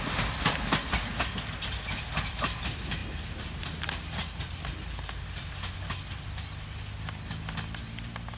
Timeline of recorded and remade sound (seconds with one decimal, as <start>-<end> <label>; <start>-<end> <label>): 0.0-8.4 recorded